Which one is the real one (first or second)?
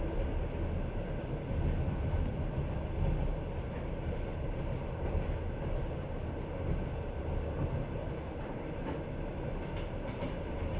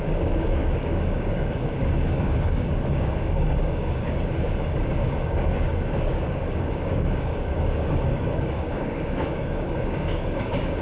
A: first